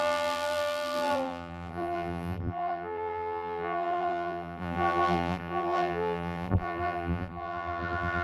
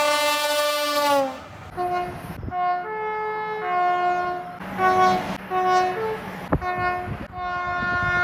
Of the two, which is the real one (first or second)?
second